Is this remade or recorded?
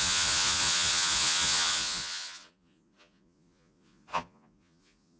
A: remade